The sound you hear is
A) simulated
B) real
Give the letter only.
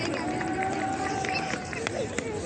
B